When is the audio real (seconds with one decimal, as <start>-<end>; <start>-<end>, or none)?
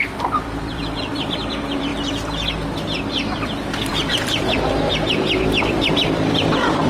1.9-3.4